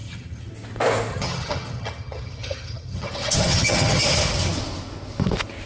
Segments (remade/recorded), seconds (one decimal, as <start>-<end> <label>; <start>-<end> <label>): 0.0-0.5 remade; 0.5-1.1 recorded; 1.1-4.0 remade; 4.0-5.7 recorded